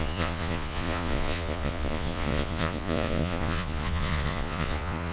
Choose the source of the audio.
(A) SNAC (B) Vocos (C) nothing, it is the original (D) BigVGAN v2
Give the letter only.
B